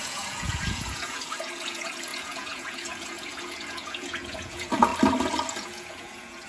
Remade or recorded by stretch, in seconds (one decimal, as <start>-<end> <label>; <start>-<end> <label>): 0.0-4.9 remade; 4.9-5.5 recorded; 5.5-6.5 remade